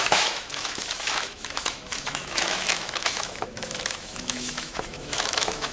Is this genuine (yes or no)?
no